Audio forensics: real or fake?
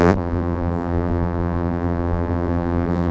fake